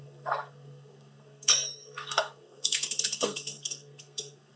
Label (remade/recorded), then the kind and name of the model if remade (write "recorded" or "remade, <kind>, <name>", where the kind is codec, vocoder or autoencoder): remade, codec, SNAC